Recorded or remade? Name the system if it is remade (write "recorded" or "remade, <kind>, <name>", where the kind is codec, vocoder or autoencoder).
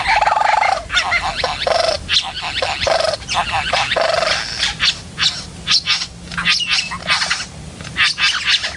recorded